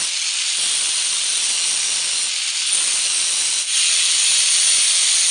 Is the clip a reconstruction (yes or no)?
no